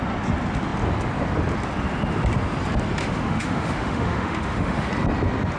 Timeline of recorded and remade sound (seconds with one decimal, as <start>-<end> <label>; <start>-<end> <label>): 0.0-3.0 recorded; 3.0-4.9 remade; 4.9-5.6 recorded